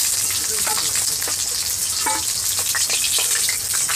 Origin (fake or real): real